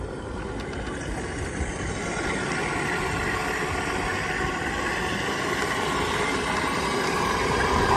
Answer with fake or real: real